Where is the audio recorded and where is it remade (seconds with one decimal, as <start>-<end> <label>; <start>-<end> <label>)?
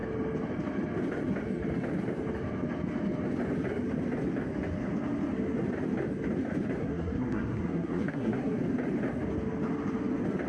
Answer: 0.0-6.8 recorded; 6.8-8.6 remade; 8.6-10.5 recorded